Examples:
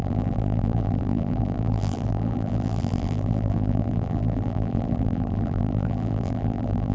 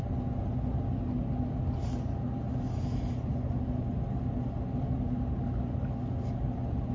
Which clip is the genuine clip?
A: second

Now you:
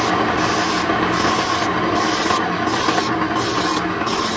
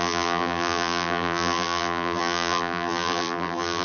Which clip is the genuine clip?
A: first